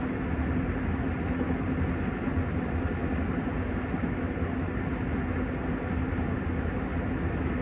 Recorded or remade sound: recorded